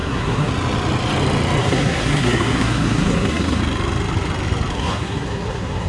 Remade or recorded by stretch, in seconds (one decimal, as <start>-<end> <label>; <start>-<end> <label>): 0.0-0.5 remade; 0.5-1.6 recorded; 1.6-3.6 remade; 3.6-4.7 recorded; 4.7-5.9 remade